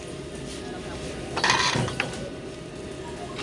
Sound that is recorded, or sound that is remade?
recorded